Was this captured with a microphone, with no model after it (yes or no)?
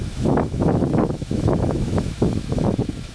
no